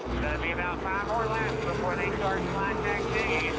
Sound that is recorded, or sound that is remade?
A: recorded